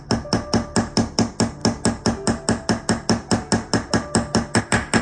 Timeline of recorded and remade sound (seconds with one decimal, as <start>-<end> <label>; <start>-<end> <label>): 0.0-5.0 recorded